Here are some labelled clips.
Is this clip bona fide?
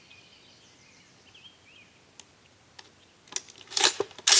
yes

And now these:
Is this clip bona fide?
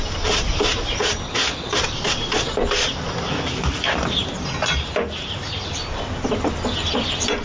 yes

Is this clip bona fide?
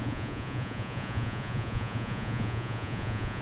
no